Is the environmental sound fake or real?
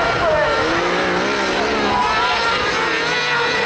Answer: real